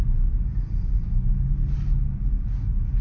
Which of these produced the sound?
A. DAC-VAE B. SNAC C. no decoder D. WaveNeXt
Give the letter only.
C